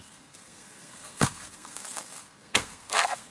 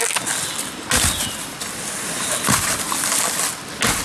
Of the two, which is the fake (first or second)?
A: first